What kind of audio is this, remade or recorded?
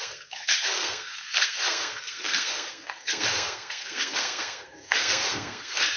remade